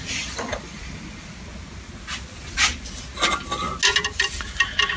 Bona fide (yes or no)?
yes